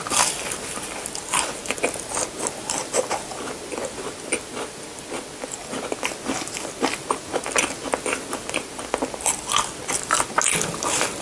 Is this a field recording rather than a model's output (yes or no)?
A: yes